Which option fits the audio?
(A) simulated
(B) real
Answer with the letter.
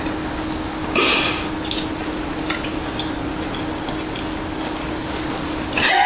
B